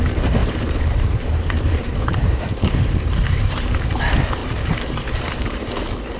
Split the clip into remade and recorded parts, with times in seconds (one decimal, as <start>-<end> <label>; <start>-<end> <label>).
0.0-0.4 recorded; 0.4-4.0 remade; 4.0-4.4 recorded; 4.4-5.8 remade; 5.8-6.2 recorded